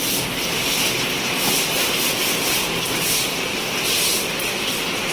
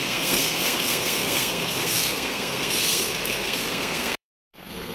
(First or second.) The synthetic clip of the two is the second